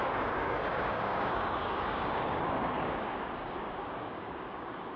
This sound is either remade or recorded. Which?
remade